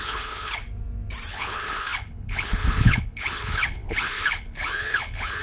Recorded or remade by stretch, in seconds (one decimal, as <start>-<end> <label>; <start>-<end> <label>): 0.0-0.6 remade; 0.6-1.3 recorded; 1.3-5.4 remade